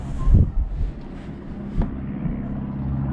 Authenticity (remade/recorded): recorded